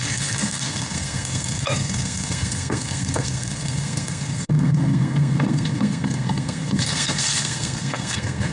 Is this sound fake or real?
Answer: fake